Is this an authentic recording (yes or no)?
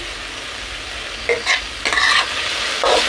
yes